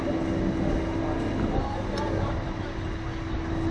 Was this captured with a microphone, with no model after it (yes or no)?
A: yes